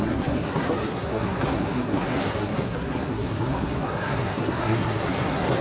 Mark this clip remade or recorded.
remade